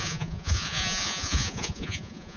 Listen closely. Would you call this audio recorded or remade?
remade